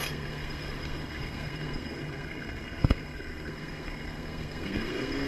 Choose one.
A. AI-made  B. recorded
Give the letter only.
A